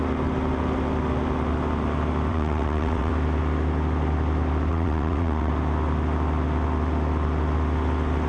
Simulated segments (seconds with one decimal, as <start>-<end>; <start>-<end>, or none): 2.3-3.1; 4.7-5.5